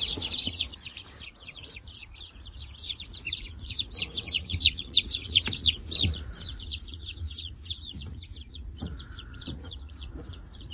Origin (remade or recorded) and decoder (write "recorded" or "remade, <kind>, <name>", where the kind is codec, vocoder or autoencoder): remade, vocoder, Vocos